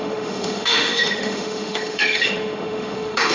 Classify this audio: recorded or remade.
remade